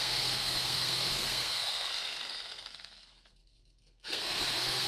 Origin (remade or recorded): remade